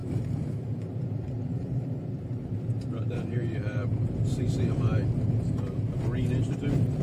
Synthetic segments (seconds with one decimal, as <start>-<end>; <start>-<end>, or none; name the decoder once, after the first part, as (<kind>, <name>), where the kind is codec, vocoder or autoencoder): 0.0-3.8 (vocoder, BigVGAN v2); 6.5-7.0